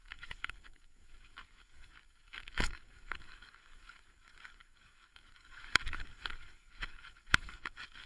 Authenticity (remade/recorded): remade